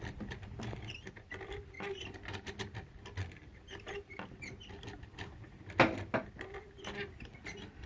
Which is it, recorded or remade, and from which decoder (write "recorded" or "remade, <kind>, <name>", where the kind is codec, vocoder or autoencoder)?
recorded